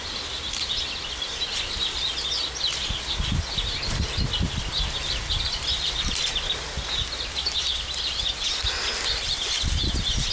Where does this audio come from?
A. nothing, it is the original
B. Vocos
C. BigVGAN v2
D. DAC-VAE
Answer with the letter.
A